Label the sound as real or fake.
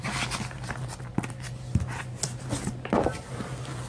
real